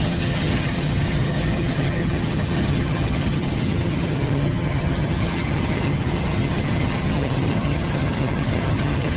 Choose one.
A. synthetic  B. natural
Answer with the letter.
A